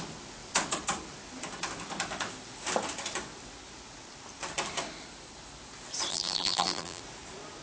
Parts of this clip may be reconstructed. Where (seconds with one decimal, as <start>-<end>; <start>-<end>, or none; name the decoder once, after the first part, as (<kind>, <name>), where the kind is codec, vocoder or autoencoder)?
6.1-7.0 (vocoder, BigVGAN v2)

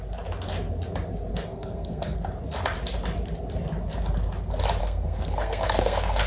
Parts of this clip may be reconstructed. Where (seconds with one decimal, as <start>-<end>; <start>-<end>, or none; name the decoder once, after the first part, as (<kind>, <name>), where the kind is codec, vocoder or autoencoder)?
1.3-2.2 (codec, SNAC); 4.8-6.3

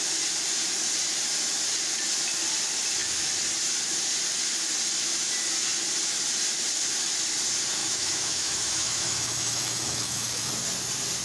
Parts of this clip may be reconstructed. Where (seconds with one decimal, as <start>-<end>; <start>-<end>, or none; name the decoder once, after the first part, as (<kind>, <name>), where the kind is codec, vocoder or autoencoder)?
7.8-10.5 (autoencoder, DAC-VAE)

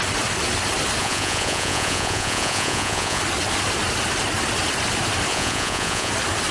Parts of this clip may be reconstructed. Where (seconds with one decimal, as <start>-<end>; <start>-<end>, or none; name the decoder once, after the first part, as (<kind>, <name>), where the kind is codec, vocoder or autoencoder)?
1.0-3.2 (vocoder, Vocos); 5.3-6.1

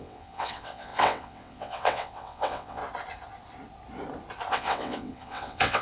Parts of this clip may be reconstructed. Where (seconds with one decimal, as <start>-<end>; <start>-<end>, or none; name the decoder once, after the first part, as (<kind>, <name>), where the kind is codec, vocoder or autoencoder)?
0.0-2.8 (vocoder, WaveNeXt); 4.5-5.8

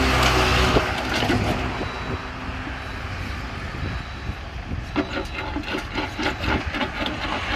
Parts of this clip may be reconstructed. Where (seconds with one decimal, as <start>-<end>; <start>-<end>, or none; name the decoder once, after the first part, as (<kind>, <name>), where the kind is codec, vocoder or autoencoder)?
none

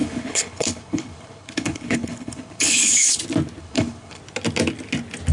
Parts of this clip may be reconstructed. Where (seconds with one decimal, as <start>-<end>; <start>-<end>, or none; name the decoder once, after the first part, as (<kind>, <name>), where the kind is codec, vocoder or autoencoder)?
0.0-3.2 (codec, HILCodec); 3.6-4.2

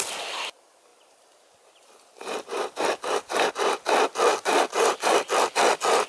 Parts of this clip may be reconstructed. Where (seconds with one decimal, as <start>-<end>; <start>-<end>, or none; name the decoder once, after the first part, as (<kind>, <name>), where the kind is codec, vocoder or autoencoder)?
0.9-3.5 (vocoder, BigVGAN v2); 4.3-5.1